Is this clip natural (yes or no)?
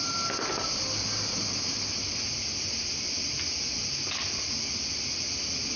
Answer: yes